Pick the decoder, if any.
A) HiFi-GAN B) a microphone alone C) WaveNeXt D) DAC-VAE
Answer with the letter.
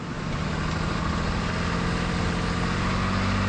B